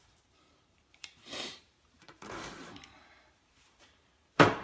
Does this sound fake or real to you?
fake